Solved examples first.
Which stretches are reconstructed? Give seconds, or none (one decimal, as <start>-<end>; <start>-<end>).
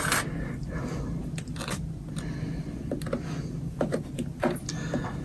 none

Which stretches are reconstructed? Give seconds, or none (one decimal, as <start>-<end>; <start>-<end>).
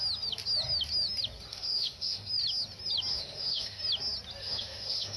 1.5-2.3; 3.1-3.8; 4.4-5.2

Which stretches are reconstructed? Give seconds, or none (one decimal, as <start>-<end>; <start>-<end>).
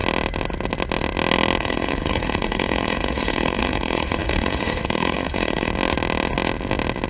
1.6-5.7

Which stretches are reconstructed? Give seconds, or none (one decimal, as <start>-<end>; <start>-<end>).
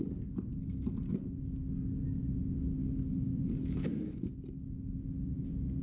2.8-4.2